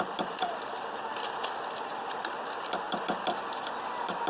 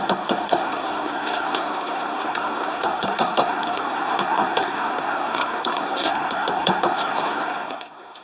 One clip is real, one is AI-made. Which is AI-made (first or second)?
second